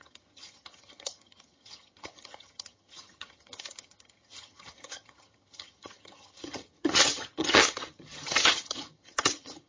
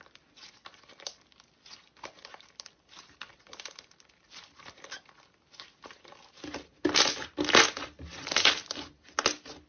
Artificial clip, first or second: first